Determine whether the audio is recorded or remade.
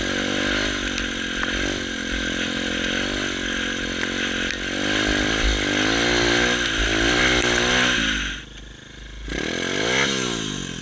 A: recorded